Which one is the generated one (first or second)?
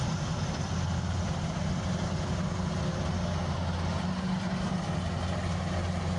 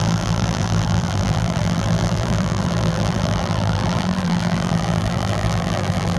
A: second